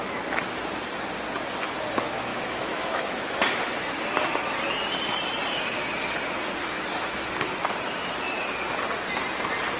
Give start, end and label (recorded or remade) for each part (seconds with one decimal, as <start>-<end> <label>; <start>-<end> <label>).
0.0-2.3 recorded; 2.3-3.9 remade; 3.9-6.6 recorded; 6.6-7.3 remade; 7.3-9.8 recorded